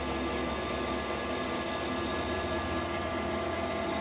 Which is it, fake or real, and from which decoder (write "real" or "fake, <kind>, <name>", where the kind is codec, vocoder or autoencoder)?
real